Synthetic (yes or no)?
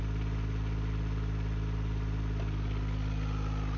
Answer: no